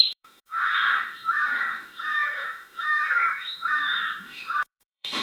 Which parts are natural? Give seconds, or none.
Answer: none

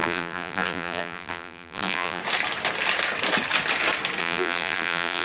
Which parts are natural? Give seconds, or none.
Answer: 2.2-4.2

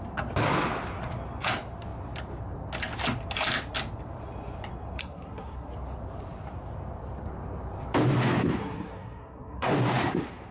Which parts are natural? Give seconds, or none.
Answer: 0.0-5.0; 5.7-8.6; 9.7-10.5

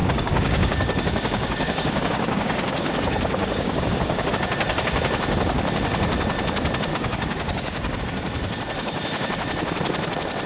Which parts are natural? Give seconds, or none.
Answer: 4.3-6.9; 8.0-10.5

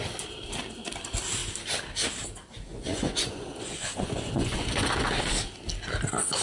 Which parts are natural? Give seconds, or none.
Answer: 0.0-2.7; 4.9-6.4